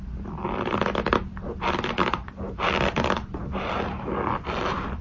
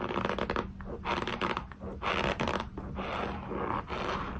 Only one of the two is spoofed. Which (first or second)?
first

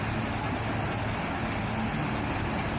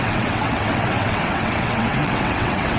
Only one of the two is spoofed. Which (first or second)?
second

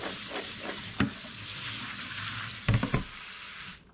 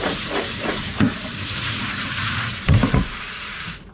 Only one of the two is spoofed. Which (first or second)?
second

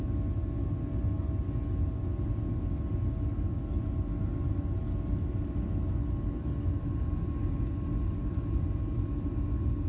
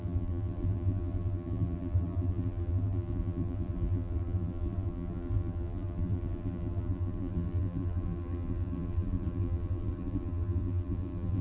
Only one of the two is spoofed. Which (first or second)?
second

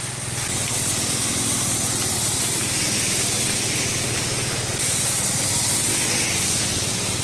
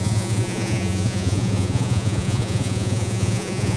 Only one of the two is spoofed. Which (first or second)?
second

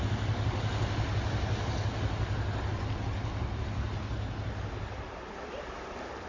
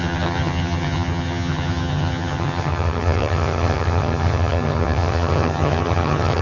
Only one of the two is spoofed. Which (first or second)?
second